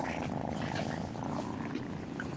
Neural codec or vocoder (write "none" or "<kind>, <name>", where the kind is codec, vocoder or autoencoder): none